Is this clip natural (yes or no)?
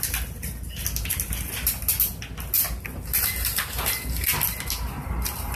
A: yes